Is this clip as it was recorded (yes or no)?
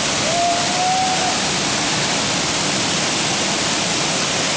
yes